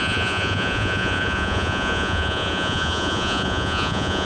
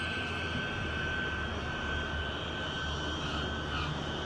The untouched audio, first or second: second